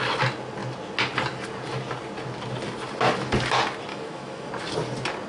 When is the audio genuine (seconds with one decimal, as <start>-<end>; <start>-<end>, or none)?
0.0-3.9; 4.5-5.3